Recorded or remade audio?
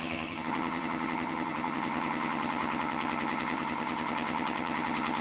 remade